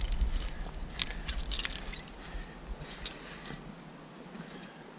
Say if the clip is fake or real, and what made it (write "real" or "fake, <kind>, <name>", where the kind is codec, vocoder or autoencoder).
real